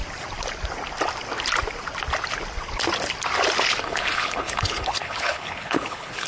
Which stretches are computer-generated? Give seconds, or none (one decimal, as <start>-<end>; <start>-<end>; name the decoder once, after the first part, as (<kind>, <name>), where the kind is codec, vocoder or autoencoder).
3.8-6.3 (codec, HILCodec)